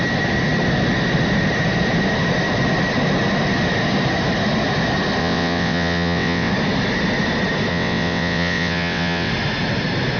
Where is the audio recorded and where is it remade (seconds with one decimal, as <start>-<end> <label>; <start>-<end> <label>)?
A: 0.0-5.2 recorded; 5.2-6.5 remade; 6.5-7.7 recorded; 7.7-9.3 remade; 9.3-10.2 recorded